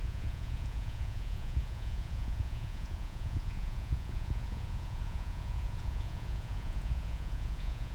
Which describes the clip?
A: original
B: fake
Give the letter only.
B